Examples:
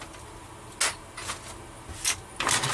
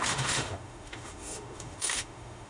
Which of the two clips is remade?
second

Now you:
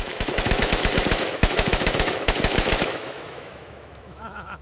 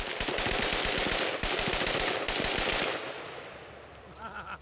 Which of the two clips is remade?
first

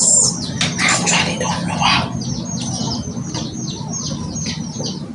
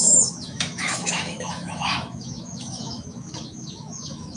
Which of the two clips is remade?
second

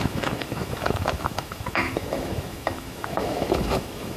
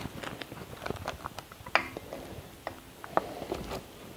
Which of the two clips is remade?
first